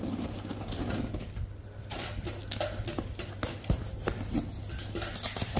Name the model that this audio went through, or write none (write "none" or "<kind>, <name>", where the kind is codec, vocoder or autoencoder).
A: none